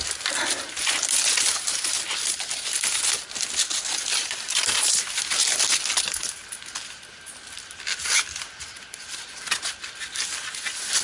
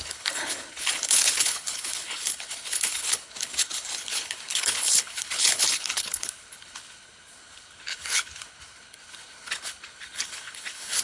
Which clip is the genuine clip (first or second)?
first